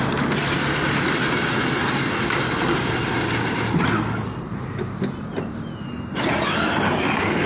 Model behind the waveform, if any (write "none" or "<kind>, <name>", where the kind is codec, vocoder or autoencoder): none